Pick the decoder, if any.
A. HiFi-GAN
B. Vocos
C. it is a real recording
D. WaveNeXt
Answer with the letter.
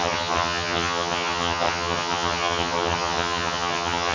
A